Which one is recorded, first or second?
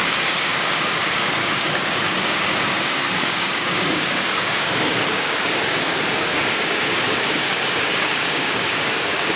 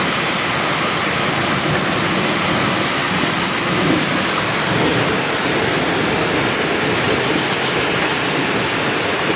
second